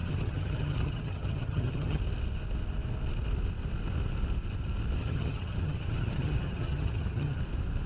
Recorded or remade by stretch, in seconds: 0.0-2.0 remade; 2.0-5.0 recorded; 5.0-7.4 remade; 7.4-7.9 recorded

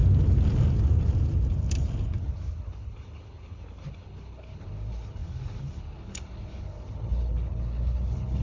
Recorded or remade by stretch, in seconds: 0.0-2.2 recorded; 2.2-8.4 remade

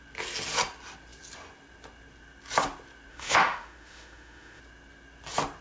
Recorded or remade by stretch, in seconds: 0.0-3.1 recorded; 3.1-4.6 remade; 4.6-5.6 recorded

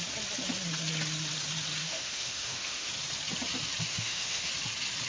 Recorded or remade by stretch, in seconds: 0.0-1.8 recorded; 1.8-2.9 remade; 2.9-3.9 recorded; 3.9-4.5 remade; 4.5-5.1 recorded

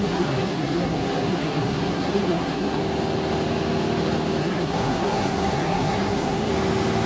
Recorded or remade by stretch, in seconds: 0.0-2.8 remade; 2.8-4.4 recorded; 4.4-6.5 remade; 6.5-7.1 recorded